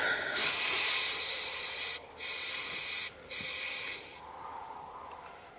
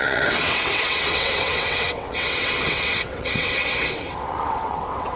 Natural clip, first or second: first